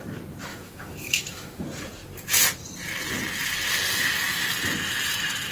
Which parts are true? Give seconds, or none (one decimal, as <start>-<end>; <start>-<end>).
0.0-0.5; 1.6-5.5